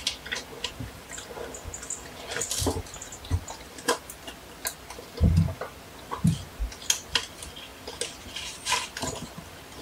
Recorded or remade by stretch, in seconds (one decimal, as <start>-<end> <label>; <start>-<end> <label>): 0.0-9.8 recorded